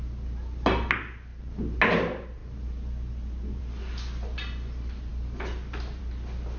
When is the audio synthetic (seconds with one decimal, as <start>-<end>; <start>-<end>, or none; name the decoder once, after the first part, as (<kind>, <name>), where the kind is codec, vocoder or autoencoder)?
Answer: none